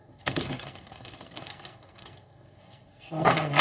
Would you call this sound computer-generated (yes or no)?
yes